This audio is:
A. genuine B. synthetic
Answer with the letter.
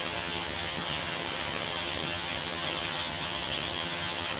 B